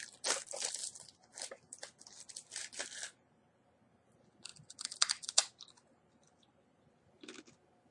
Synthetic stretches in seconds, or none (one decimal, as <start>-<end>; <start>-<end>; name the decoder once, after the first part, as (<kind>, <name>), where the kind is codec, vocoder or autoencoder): 0.8-2.0 (vocoder, BigVGAN v2); 4.5-7.1